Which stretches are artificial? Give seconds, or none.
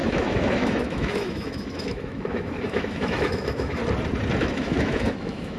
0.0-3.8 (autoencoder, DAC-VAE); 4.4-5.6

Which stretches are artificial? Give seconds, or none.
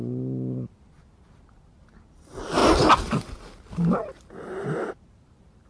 none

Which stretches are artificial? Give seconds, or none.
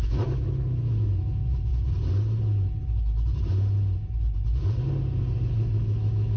0.0-1.7 (autoencoder, DAC-VAE); 5.5-6.4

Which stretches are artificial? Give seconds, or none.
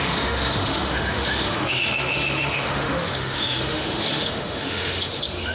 0.0-5.5 (autoencoder, DAC-VAE)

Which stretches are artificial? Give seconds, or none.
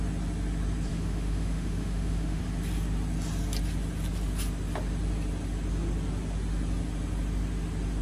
0.9-2.4 (autoencoder, DAC-VAE)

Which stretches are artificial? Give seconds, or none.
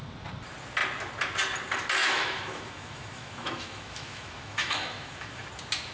2.0-5.5 (autoencoder, DAC-VAE)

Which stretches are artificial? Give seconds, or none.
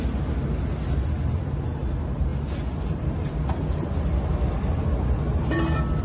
none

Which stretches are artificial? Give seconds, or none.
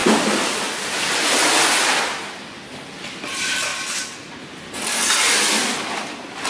none